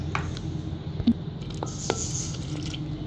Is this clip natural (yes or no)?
yes